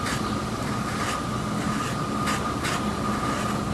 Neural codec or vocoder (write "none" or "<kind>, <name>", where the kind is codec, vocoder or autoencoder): none